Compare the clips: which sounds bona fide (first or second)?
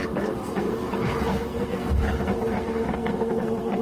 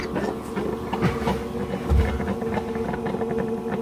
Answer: second